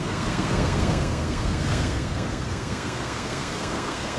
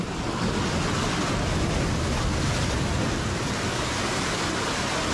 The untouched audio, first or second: second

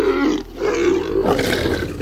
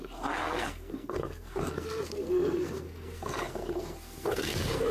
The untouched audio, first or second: first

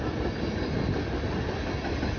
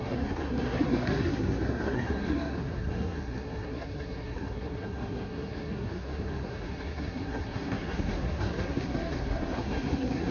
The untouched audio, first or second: first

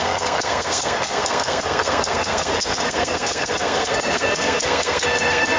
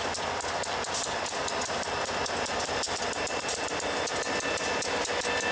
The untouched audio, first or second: second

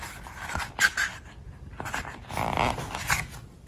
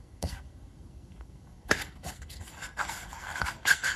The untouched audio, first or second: first